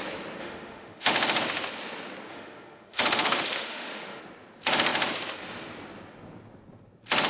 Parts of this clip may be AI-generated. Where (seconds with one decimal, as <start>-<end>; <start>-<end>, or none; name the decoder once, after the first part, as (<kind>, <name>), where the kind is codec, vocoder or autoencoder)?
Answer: 0.4-1.1 (autoencoder, DAC-VAE); 2.3-4.2